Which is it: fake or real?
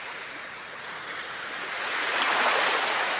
fake